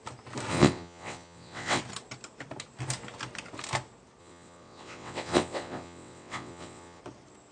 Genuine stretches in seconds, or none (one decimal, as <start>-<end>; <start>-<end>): 0.0-0.5; 1.8-4.2; 7.0-7.5